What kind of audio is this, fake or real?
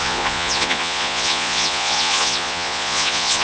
fake